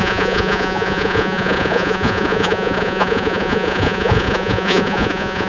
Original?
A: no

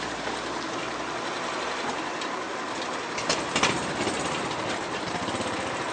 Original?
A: yes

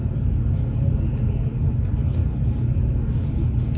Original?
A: yes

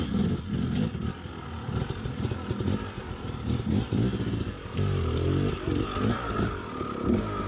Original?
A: yes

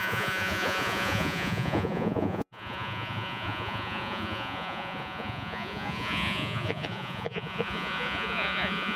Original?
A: no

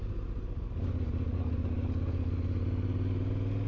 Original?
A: yes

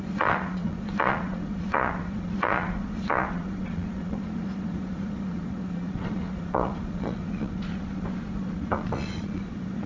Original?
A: no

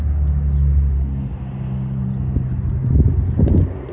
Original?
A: yes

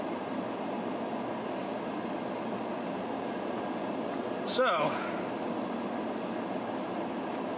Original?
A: yes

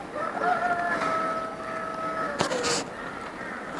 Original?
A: yes